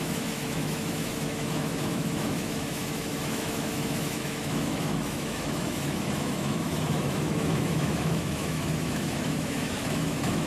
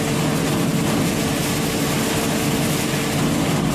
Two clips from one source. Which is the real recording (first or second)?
second